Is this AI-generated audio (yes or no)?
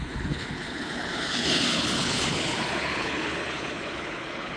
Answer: yes